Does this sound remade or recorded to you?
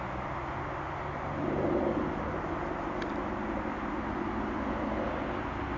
recorded